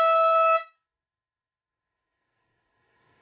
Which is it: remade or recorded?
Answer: remade